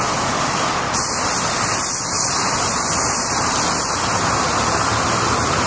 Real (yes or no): no